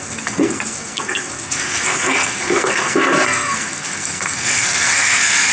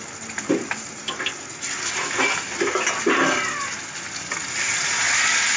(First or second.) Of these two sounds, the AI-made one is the first